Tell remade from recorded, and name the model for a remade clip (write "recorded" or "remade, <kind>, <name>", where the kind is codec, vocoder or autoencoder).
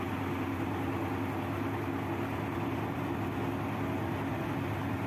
recorded